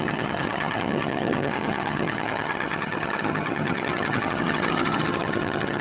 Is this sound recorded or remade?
remade